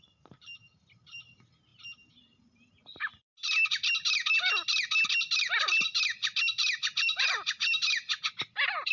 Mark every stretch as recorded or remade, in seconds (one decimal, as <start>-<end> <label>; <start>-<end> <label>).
0.0-1.7 remade; 1.7-6.8 recorded; 6.8-8.9 remade